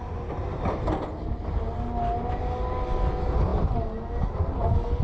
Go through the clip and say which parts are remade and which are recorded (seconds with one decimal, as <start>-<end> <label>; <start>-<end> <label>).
0.0-5.0 recorded